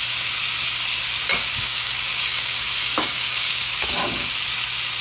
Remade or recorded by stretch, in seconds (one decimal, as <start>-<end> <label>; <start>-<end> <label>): 0.0-1.3 recorded; 1.3-4.3 remade; 4.3-5.0 recorded